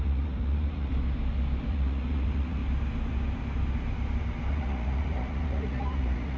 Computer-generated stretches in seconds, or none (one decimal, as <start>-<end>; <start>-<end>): 0.0-0.9; 1.7-2.6; 4.5-6.4